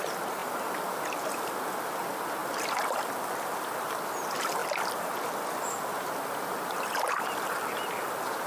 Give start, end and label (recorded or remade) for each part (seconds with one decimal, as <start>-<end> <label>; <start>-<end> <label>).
0.0-8.5 recorded